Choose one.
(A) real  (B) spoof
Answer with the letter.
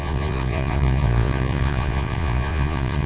B